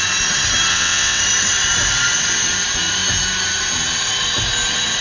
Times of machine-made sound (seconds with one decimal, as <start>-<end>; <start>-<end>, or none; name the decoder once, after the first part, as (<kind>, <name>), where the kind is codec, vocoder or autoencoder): 0.7-1.2 (vocoder, WaveNeXt)